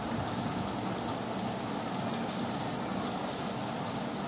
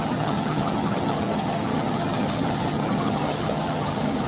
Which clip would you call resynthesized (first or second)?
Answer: second